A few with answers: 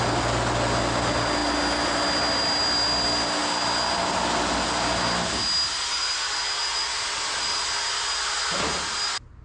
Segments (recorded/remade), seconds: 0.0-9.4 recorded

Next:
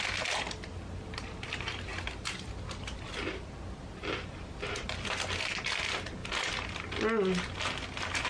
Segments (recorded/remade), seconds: 0.0-1.9 recorded; 1.9-2.5 remade; 2.5-8.3 recorded

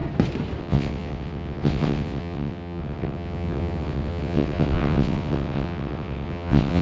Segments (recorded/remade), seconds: 0.0-0.6 recorded; 0.6-6.8 remade

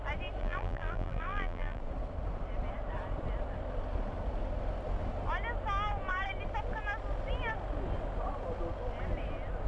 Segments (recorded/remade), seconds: 0.0-0.4 recorded; 0.4-1.8 remade; 1.8-9.7 recorded

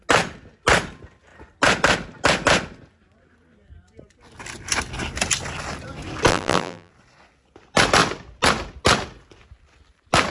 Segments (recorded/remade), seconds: 0.0-6.3 recorded; 6.3-6.9 remade; 6.9-10.3 recorded

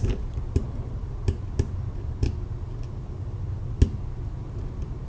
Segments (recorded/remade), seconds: 0.0-5.1 recorded

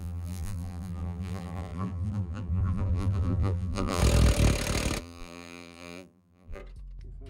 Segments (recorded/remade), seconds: 0.0-4.0 remade; 4.0-5.0 recorded; 5.0-6.6 remade; 6.6-7.3 recorded

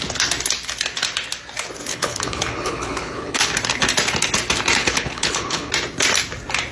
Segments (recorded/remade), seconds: 0.0-1.9 recorded; 1.9-3.5 remade; 3.5-4.8 recorded; 4.8-5.7 remade; 5.7-6.7 recorded